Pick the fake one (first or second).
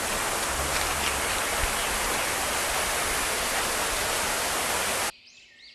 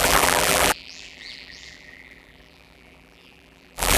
second